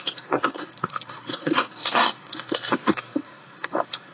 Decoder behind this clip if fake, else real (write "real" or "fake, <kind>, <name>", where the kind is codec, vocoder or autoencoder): fake, codec, SNAC